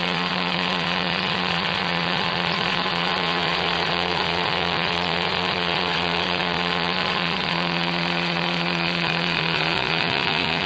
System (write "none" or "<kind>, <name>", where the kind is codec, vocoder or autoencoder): vocoder, Vocos